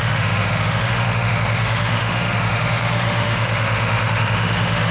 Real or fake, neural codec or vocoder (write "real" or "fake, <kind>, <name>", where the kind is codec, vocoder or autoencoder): fake, autoencoder, DAC-VAE